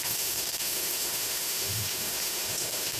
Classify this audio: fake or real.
fake